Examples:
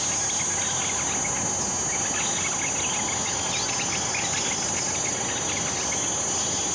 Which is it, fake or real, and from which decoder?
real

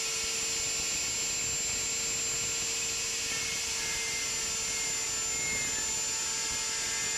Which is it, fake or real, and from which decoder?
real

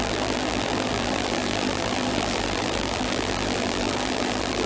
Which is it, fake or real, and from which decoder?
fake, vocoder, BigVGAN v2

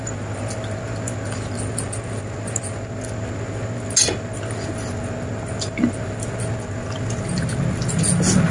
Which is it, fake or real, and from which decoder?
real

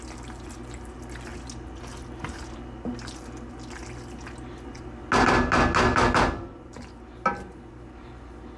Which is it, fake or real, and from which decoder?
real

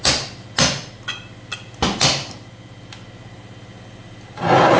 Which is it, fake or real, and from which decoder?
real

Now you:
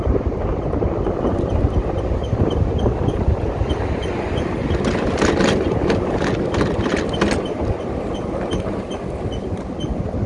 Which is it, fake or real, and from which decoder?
real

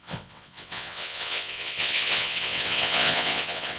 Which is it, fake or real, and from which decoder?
fake, vocoder, WaveNeXt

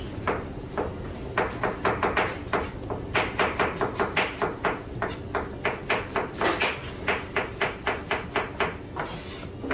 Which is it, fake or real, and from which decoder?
real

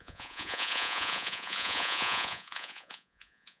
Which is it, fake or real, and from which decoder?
fake, vocoder, Vocos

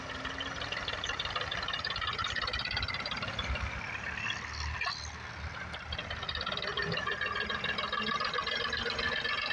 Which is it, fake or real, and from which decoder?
real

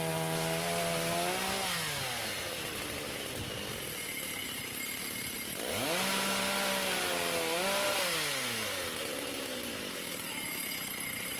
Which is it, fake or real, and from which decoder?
real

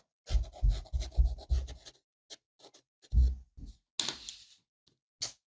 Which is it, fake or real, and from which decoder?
real